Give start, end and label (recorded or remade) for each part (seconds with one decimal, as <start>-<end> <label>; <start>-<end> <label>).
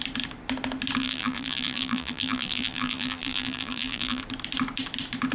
0.0-1.0 recorded; 1.0-4.2 remade; 4.2-5.3 recorded